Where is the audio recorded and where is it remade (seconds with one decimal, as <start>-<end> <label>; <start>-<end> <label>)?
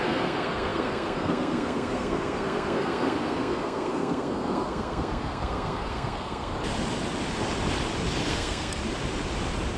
0.0-6.5 remade; 6.5-8.3 recorded; 8.3-8.8 remade; 8.8-9.8 recorded